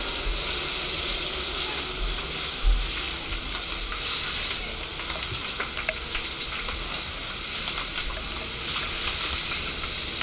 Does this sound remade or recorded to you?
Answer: recorded